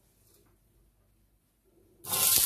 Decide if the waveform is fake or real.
real